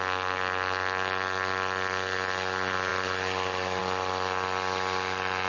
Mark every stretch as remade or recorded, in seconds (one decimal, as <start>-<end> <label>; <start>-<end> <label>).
0.0-5.5 recorded